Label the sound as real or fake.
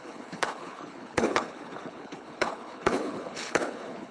fake